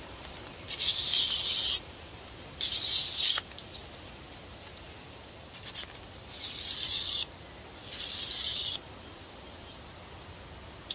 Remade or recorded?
recorded